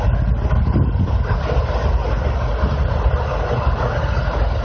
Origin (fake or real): real